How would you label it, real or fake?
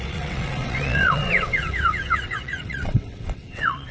fake